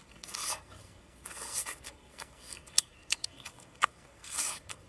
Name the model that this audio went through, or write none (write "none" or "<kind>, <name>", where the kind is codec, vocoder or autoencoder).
codec, SNAC